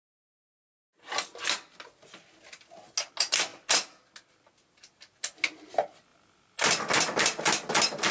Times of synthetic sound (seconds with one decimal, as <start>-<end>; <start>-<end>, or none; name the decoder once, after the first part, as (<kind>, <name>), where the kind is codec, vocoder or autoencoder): none